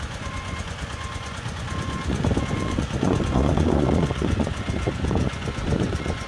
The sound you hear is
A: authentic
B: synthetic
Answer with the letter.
B